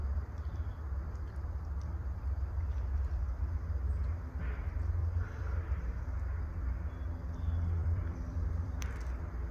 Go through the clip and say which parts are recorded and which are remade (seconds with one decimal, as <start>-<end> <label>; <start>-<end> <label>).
0.0-3.1 remade; 3.1-5.0 recorded; 5.0-6.6 remade; 6.6-7.8 recorded; 7.8-8.8 remade; 8.8-9.5 recorded